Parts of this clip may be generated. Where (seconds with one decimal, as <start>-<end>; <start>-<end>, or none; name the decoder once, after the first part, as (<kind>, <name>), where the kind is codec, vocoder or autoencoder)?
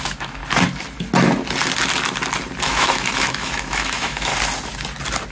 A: 0.0-0.4 (autoencoder, DAC-VAE); 2.6-4.3